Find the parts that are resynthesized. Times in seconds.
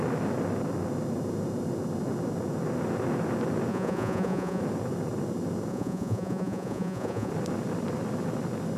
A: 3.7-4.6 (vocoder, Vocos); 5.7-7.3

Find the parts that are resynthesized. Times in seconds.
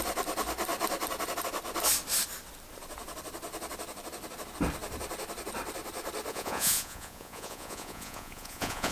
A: 6.3-8.9 (vocoder, Vocos)